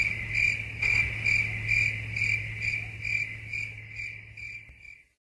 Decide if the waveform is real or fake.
real